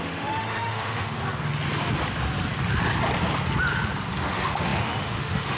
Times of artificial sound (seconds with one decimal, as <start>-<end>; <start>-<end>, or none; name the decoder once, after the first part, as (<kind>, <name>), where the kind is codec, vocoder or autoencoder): 0.0-1.2 (autoencoder, DAC-VAE); 4.2-5.6